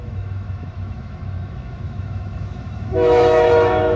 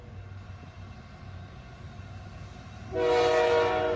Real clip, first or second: second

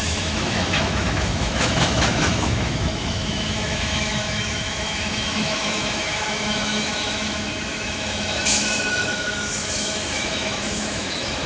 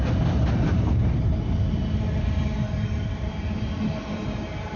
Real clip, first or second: second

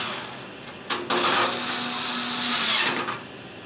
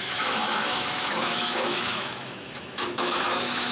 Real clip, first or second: first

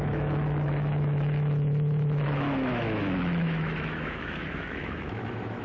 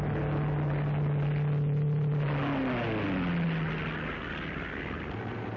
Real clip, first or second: second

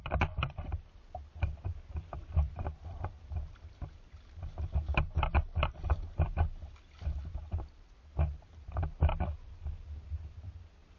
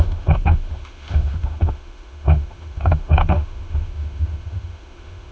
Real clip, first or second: first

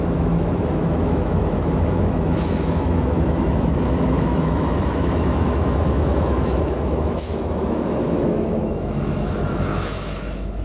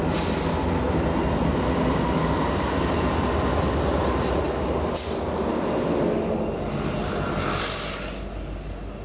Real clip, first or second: second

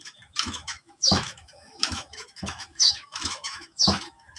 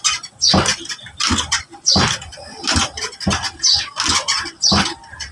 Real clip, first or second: second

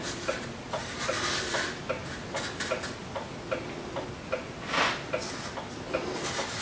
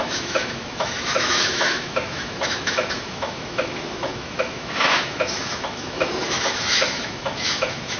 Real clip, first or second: first